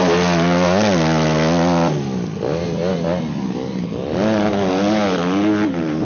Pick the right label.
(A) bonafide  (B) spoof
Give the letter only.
A